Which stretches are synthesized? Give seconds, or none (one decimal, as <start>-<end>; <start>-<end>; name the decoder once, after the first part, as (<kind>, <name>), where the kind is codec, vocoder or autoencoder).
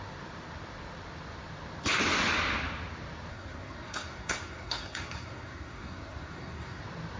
3.3-6.8 (codec, SNAC)